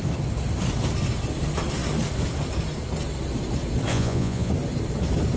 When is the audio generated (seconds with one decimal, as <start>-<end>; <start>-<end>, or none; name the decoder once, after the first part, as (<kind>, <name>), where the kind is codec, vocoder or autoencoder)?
3.9-4.5 (vocoder, Vocos)